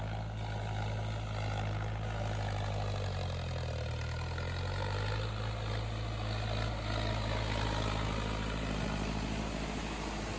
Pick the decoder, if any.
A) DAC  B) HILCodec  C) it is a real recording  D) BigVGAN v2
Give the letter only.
C